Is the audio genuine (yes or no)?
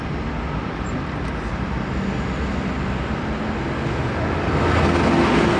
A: yes